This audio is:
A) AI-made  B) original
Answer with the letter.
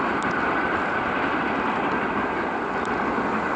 B